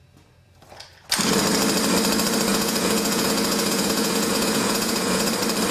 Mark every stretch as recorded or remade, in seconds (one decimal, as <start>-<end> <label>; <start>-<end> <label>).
0.0-2.5 recorded; 2.5-5.3 remade; 5.3-5.7 recorded